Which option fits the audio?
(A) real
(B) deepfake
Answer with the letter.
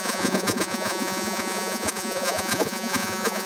B